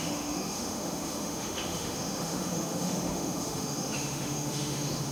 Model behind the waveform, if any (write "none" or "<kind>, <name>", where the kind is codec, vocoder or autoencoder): autoencoder, DAC-VAE